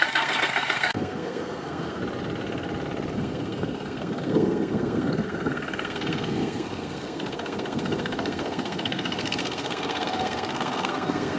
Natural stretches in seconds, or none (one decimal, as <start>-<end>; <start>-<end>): 2.0-3.1